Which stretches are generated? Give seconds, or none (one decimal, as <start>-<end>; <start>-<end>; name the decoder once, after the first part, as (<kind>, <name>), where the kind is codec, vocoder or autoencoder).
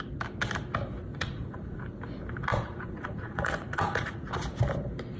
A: 1.1-1.8 (vocoder, Vocos); 2.5-4.3